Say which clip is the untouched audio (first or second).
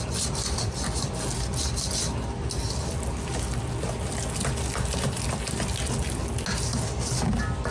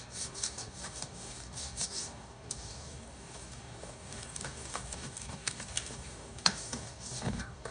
first